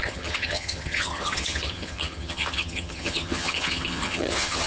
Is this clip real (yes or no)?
no